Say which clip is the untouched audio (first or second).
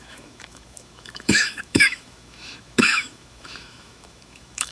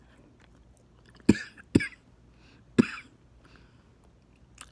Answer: second